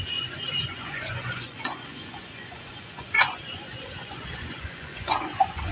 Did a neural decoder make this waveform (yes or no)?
yes